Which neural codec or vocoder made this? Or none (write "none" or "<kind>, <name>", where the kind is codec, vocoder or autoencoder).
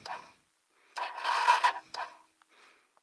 none